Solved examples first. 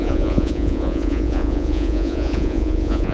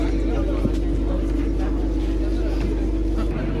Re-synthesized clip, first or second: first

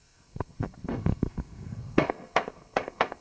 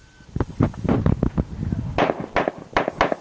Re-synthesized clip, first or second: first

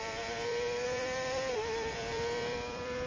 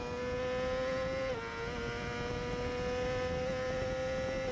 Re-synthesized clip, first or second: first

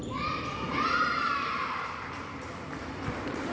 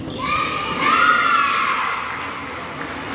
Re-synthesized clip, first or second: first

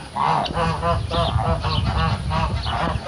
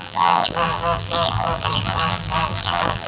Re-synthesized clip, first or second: second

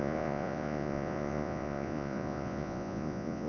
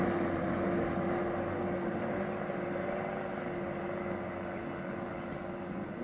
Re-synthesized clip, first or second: first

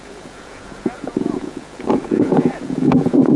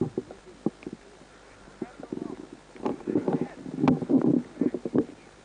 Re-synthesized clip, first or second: first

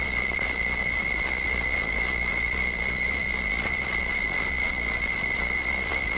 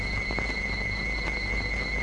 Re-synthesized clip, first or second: first